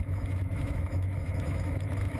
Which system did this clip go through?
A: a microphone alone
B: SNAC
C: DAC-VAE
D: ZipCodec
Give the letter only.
C